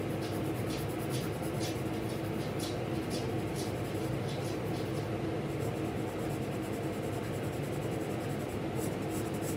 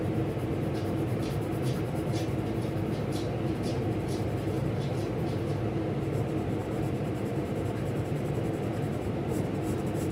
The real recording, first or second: first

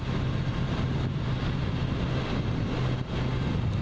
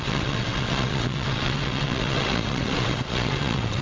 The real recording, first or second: first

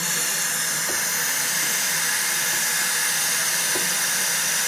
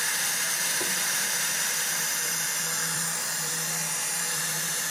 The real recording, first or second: first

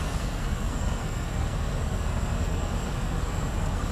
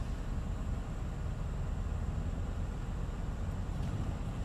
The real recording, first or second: second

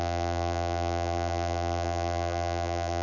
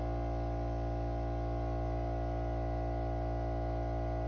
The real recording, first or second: second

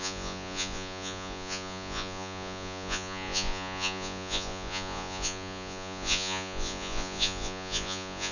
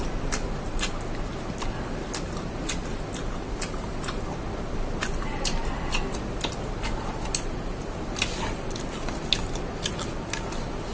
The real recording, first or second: second